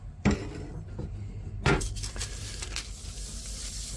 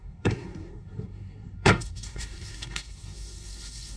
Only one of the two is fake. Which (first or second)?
second